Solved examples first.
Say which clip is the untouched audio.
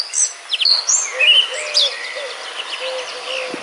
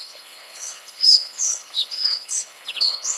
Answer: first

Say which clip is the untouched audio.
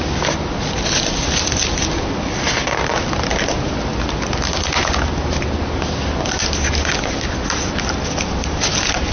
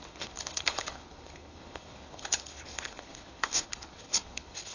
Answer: first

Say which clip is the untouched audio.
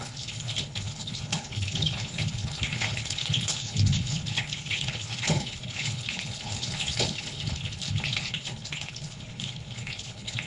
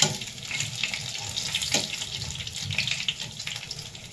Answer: second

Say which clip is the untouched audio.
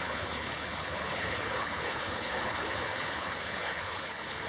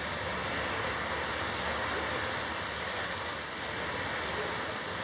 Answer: second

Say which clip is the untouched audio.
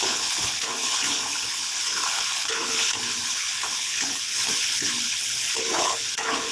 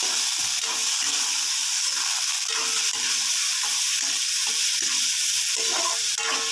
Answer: second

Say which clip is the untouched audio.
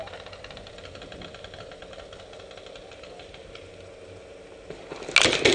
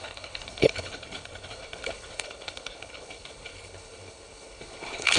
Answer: first